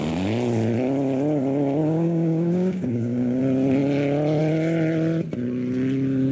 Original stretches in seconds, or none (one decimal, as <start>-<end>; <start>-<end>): 0.0-1.8; 3.4-6.3